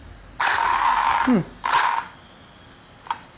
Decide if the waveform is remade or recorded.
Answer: recorded